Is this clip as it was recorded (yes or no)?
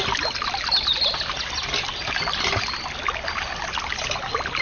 yes